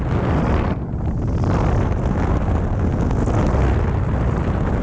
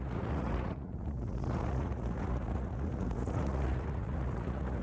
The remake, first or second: second